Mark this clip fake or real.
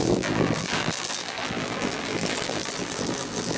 fake